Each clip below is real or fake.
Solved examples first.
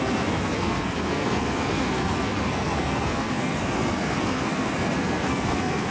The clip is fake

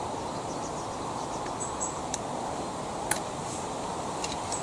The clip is real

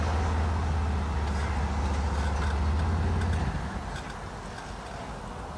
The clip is real